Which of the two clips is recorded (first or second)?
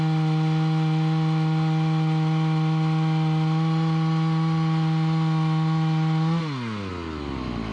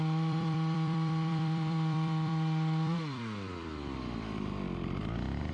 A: first